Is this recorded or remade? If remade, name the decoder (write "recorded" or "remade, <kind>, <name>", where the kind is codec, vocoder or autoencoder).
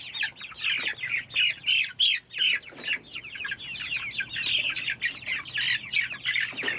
recorded